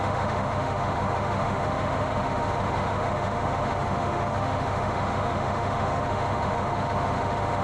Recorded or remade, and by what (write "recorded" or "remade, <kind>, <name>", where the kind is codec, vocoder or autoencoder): remade, autoencoder, DAC-VAE